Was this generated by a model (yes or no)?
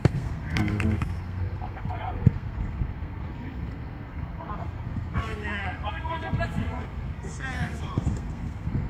yes